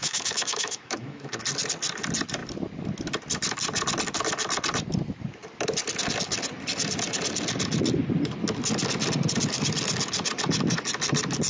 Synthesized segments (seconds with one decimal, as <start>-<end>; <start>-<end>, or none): 0.0-1.4